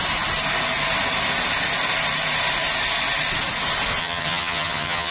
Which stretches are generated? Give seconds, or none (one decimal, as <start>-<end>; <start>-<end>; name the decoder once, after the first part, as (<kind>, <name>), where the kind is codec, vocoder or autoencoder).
4.0-5.1 (vocoder, HiFi-GAN)